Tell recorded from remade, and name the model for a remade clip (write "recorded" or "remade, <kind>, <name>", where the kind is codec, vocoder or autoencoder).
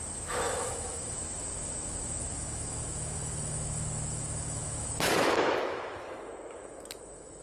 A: remade, autoencoder, DAC-VAE